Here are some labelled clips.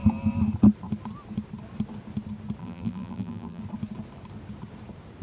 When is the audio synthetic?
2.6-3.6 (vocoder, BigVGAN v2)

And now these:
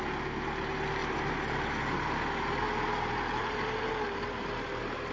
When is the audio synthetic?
1.0-2.1 (vocoder, BigVGAN v2); 3.4-3.9

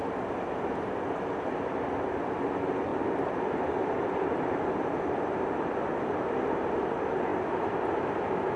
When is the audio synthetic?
2.9-6.3 (vocoder, BigVGAN v2)

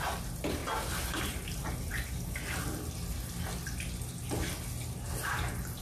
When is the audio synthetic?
none

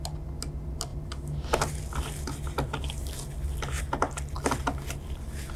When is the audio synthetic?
none

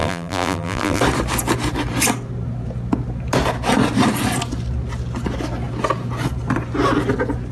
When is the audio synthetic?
0.0-1.0 (vocoder, BigVGAN v2)

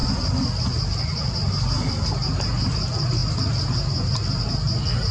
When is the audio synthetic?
none